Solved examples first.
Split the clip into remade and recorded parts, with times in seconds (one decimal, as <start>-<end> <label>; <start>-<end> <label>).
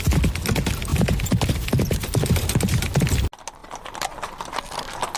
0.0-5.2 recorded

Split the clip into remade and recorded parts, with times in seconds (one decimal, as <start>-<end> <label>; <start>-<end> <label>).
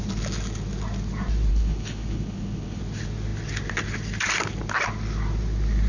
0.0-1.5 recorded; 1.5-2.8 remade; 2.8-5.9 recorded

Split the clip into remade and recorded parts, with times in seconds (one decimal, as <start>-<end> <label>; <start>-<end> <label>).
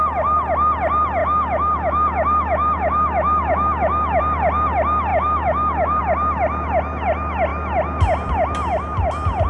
0.0-1.2 recorded; 1.2-4.2 remade; 4.2-5.1 recorded; 5.1-6.0 remade; 6.0-9.5 recorded